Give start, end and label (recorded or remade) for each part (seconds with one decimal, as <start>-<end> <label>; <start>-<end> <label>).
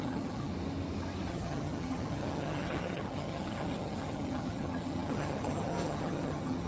0.0-0.5 remade; 0.5-1.3 recorded; 1.3-6.7 remade